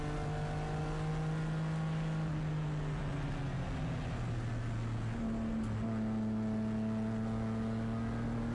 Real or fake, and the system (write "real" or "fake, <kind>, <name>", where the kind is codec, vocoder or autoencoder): real